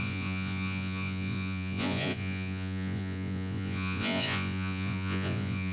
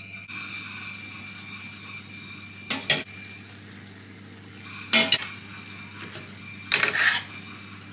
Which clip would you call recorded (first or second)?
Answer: second